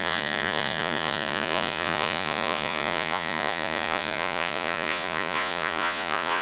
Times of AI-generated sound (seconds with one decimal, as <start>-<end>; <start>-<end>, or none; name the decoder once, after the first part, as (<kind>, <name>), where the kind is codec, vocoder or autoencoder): 0.0-6.4 (vocoder, Vocos)